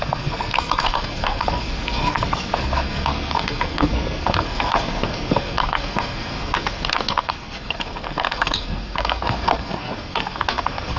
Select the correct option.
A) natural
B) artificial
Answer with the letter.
B